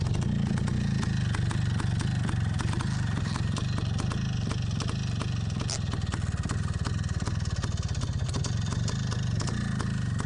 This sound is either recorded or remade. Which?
recorded